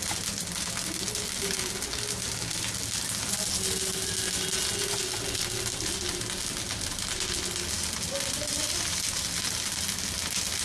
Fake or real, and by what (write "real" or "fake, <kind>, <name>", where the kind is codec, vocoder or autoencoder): real